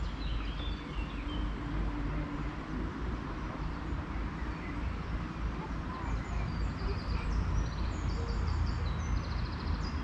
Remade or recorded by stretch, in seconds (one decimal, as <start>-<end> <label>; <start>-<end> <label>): 0.0-3.0 recorded; 3.0-5.1 remade; 5.1-10.0 recorded